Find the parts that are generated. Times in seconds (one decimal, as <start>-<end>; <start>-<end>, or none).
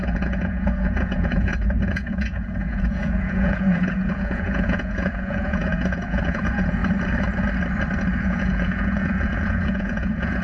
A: 0.0-6.8; 8.2-10.4